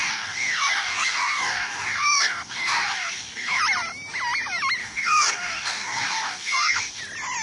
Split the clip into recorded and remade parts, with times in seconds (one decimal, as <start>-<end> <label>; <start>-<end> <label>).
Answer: 0.0-3.6 remade; 3.6-4.8 recorded; 4.8-7.0 remade; 7.0-7.4 recorded